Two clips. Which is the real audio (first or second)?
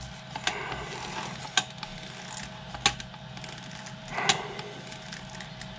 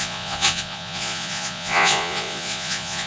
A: first